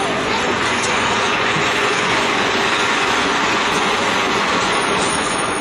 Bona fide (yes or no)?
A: no